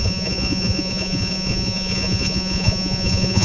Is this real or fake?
fake